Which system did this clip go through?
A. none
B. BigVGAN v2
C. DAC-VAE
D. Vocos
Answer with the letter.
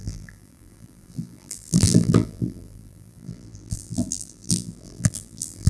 B